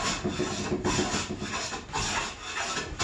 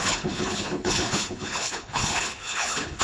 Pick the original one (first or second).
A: first